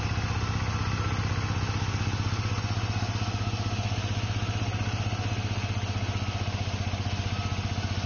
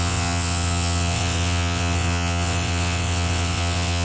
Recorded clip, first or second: first